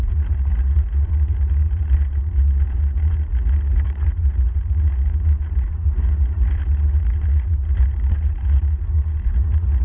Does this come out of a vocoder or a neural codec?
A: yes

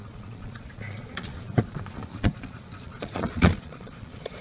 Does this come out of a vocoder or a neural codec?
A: yes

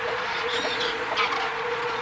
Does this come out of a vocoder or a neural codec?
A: yes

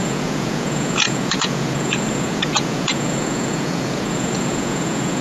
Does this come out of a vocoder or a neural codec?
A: yes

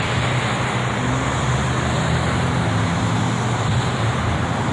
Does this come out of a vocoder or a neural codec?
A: no